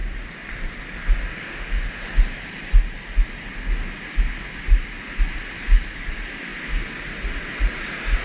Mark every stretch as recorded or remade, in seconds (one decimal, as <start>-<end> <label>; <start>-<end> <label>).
0.0-1.5 recorded; 1.5-2.0 remade; 2.0-8.2 recorded